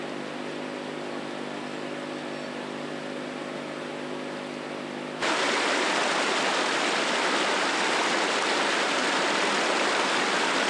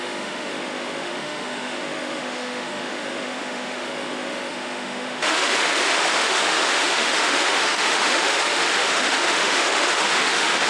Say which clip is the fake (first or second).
second